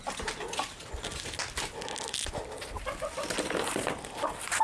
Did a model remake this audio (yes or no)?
no